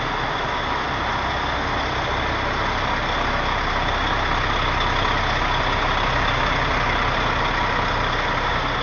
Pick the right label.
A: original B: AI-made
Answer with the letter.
A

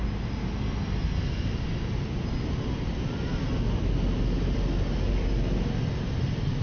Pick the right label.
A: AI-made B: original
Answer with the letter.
B